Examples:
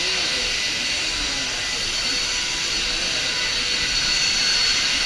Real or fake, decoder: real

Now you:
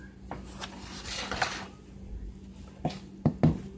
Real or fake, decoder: real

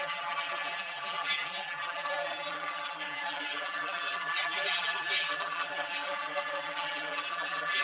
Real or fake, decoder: fake, vocoder, BigVGAN v2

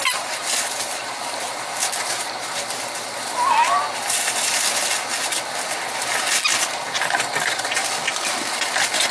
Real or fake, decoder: real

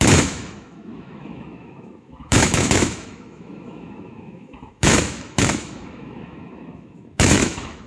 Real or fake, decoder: fake, autoencoder, DAC-VAE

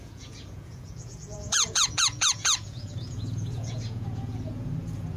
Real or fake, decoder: fake, vocoder, Vocos